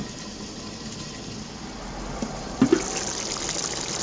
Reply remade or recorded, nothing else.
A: recorded